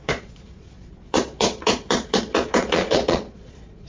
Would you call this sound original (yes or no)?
no